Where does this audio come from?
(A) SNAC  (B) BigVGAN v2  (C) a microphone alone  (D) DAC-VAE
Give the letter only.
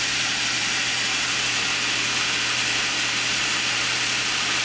C